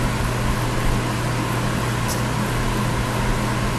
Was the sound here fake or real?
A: real